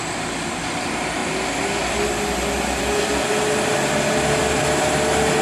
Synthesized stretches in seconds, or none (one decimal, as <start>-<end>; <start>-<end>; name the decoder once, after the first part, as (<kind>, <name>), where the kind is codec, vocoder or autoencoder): none